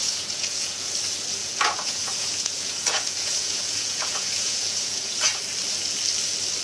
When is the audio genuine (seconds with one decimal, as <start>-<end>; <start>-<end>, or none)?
0.9-1.4; 5.4-6.6